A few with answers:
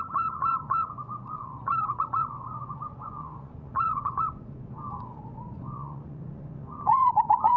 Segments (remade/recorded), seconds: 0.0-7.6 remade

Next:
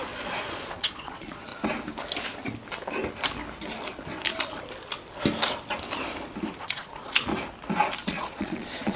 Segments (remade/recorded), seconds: 0.0-1.5 remade; 1.5-6.6 recorded; 6.6-7.3 remade; 7.3-8.1 recorded; 8.1-9.0 remade

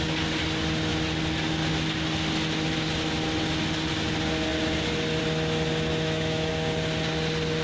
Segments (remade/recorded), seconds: 0.0-5.9 recorded; 5.9-6.5 remade; 6.5-7.6 recorded

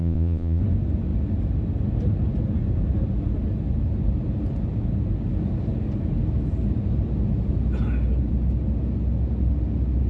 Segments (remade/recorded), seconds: 0.0-0.6 remade; 0.6-10.1 recorded

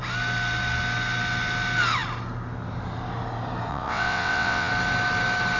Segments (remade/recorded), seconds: 0.0-3.7 recorded; 3.7-4.7 remade; 4.7-5.6 recorded